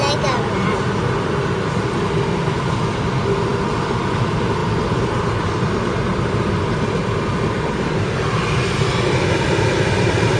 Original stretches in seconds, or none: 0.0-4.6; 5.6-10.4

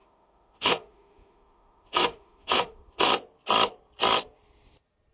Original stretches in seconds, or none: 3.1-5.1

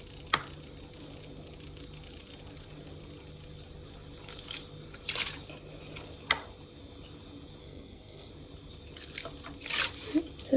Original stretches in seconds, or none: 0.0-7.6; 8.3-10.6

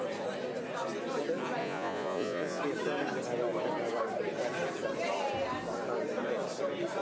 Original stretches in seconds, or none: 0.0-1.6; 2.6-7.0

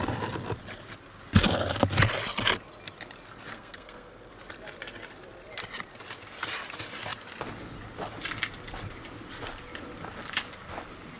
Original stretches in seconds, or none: 0.0-3.5; 4.3-11.2